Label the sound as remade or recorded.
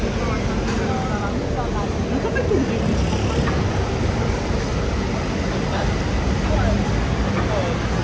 recorded